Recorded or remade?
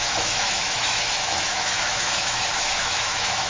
remade